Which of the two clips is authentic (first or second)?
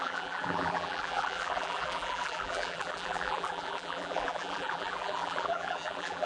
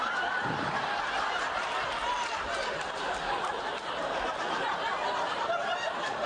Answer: second